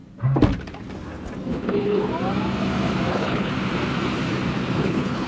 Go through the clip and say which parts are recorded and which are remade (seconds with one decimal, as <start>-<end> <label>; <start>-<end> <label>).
0.0-1.5 recorded; 1.5-2.1 remade; 2.1-3.1 recorded; 3.1-3.5 remade; 3.5-4.8 recorded; 4.8-5.3 remade